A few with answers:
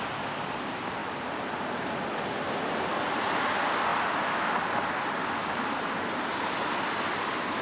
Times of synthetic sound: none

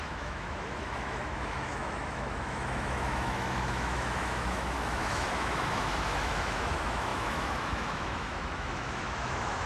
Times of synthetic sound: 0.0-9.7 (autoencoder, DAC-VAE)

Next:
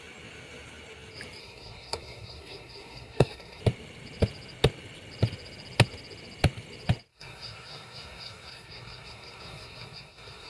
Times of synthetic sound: 1.4-3.6 (codec, SNAC); 7.1-10.5

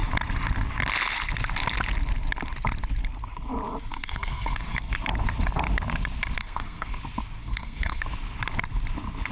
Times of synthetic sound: 3.9-4.9 (codec, SNAC); 6.4-7.0; 7.4-8.0

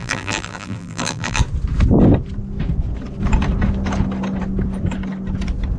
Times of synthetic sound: 0.0-1.4 (vocoder, BigVGAN v2)

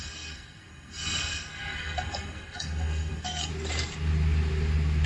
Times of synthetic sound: 0.0-3.5 (codec, SNAC)

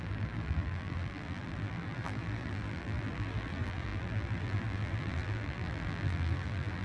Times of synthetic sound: 0.0-6.8 (vocoder, BigVGAN v2)

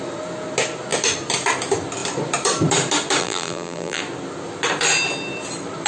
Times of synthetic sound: 3.2-4.0 (vocoder, BigVGAN v2)